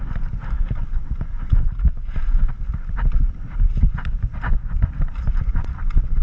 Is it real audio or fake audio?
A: real